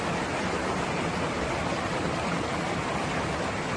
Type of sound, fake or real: real